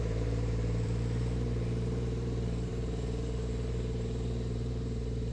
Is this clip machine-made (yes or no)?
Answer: yes